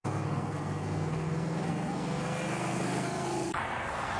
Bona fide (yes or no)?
no